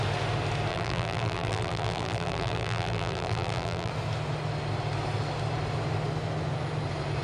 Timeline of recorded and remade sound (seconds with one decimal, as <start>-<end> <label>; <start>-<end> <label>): 0.0-0.7 recorded; 0.7-3.9 remade; 3.9-7.2 recorded